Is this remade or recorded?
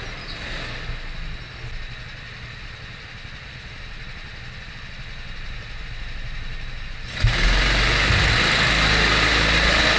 recorded